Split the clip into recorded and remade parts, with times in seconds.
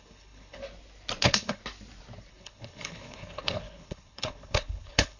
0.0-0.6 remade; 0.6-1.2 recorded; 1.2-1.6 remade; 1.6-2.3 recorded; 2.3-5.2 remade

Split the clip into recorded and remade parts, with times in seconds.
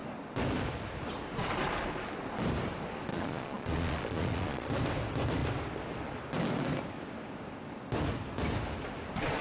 0.0-3.1 recorded; 3.1-4.7 remade; 4.7-9.4 recorded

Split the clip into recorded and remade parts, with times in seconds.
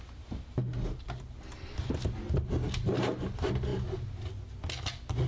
0.0-5.3 recorded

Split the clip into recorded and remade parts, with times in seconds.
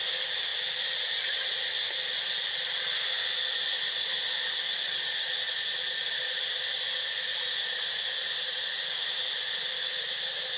0.0-10.6 recorded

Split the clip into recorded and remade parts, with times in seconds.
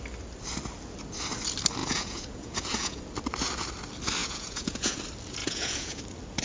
0.0-1.8 recorded; 1.8-3.0 remade; 3.0-4.2 recorded; 4.2-5.0 remade; 5.0-5.4 recorded; 5.4-6.0 remade; 6.0-6.4 recorded